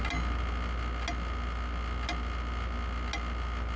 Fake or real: real